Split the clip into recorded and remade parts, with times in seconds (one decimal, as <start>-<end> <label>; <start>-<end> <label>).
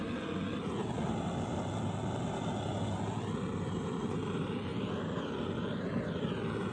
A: 0.0-6.7 recorded